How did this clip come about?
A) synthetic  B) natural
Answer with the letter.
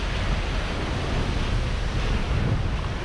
B